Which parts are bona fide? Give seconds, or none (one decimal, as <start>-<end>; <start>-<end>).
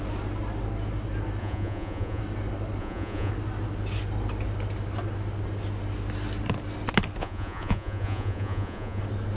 0.0-1.4; 2.2-2.8; 3.3-7.2; 9.0-9.4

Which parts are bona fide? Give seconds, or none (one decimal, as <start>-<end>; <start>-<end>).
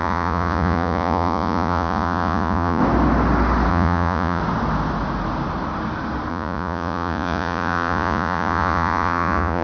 2.8-3.7; 4.4-6.3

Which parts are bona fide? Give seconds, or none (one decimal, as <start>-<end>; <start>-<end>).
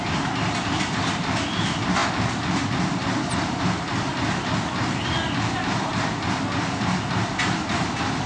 0.0-8.3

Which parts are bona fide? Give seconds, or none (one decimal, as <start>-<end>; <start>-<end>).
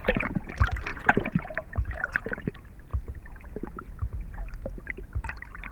0.5-0.9; 2.5-2.9; 4.4-5.7